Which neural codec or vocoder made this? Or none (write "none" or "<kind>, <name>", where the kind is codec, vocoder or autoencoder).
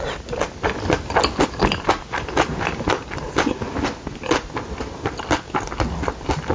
none